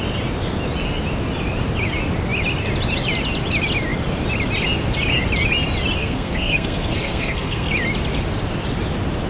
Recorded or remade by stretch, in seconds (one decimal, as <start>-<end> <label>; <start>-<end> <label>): 0.0-6.0 recorded; 6.0-7.7 remade; 7.7-9.3 recorded